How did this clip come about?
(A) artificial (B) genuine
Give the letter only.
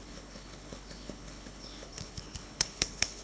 A